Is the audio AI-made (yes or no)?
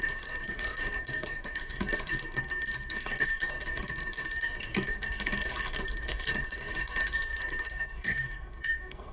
yes